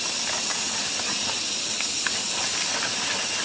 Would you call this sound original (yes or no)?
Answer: yes